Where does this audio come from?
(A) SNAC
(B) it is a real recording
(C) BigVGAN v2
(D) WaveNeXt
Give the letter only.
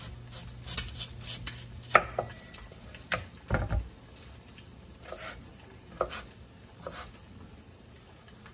B